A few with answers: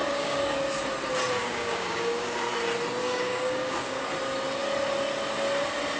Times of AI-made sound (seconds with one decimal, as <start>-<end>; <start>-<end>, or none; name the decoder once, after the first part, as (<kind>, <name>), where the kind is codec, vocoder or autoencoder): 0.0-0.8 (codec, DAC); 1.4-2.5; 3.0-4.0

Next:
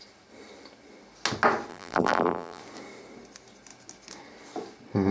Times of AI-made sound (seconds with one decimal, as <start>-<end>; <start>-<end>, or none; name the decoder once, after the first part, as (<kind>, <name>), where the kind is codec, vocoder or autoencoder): 1.7-2.6 (vocoder, BigVGAN v2)

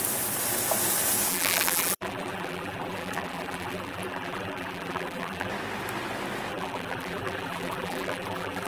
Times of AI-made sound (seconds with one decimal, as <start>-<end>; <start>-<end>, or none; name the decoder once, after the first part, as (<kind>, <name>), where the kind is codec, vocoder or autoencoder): 1.3-5.5 (vocoder, BigVGAN v2); 6.5-8.7

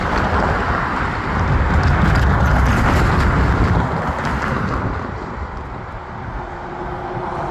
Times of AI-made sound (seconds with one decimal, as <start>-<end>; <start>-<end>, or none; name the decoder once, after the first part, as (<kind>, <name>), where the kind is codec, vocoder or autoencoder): 2.5-5.2 (vocoder, BigVGAN v2)

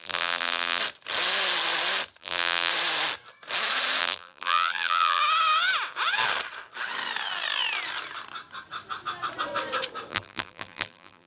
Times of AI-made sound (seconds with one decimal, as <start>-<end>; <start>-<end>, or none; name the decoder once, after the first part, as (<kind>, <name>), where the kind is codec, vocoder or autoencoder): 0.0-0.8 (vocoder, BigVGAN v2); 2.2-2.7; 4.0-5.2; 10.1-11.3